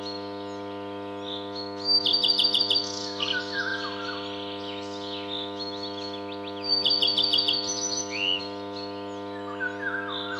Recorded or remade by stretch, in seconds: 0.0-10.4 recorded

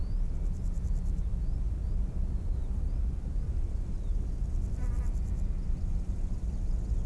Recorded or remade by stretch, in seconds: 0.0-7.1 recorded